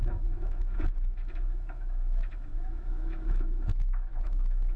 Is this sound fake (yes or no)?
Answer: yes